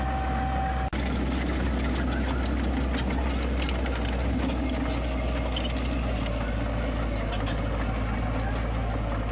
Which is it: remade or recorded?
recorded